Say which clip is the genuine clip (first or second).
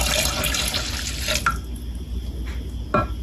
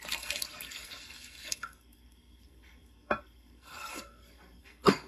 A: first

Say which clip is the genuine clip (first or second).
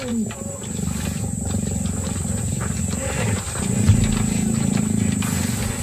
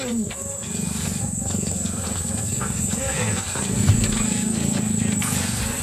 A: first